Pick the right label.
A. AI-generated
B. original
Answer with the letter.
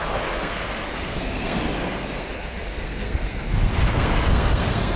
A